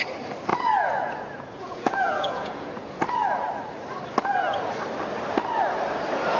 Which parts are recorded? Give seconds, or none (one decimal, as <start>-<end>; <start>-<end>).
0.0-0.5; 2.7-6.4